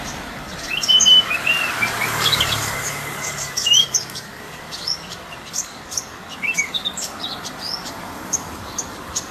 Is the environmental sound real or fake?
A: fake